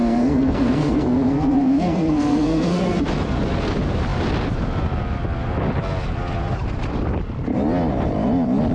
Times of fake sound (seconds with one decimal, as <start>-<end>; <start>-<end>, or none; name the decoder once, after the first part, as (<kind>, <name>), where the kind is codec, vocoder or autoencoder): 0.0-3.0 (codec, SNAC)